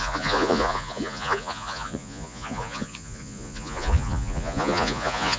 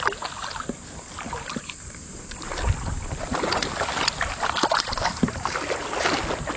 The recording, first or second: second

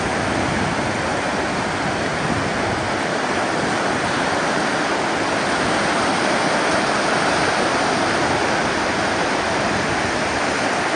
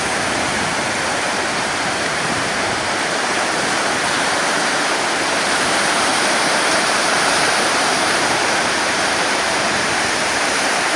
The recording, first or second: first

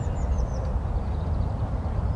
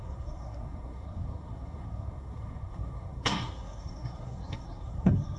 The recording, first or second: first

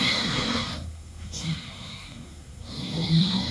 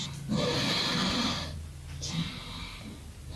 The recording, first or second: second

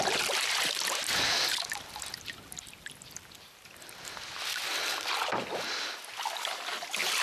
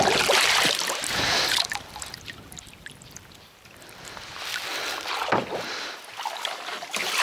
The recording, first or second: first